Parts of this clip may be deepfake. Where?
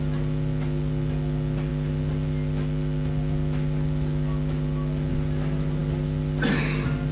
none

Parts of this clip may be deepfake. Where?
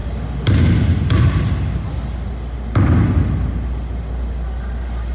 none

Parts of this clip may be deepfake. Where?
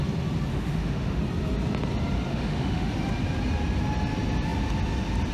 0.5-1.2 (autoencoder, DAC-VAE); 2.3-2.9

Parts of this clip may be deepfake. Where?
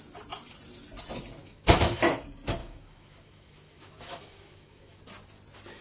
1.4-2.0 (autoencoder, DAC-VAE); 2.6-5.0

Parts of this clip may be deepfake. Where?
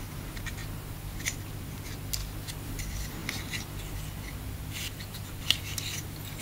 none